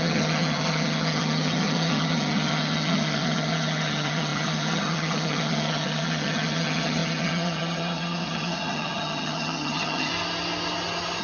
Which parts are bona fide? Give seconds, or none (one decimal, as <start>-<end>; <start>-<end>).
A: 10.1-11.2